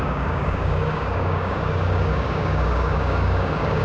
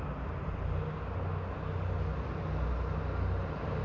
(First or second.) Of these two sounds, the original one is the second